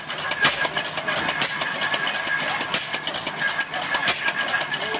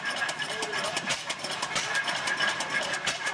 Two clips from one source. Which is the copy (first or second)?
second